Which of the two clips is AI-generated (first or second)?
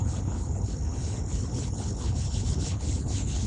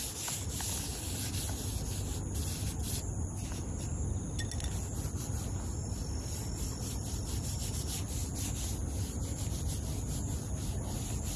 first